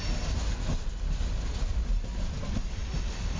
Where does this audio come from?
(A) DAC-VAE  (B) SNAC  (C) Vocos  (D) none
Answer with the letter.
D